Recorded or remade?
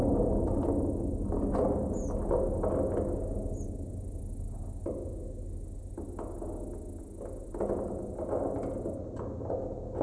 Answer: recorded